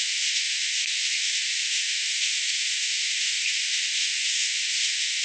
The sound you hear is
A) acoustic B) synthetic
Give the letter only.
B